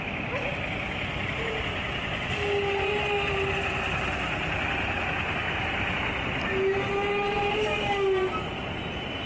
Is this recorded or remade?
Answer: recorded